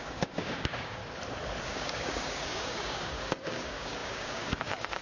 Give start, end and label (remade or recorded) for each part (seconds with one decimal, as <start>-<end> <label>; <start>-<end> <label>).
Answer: 0.0-1.0 remade; 1.0-1.6 recorded; 1.6-5.0 remade